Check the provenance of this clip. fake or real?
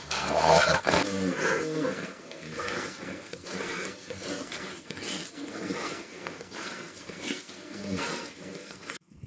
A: fake